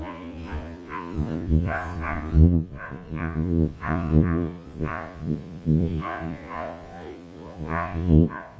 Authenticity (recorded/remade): remade